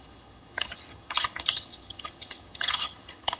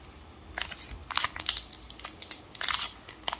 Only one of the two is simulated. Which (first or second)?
first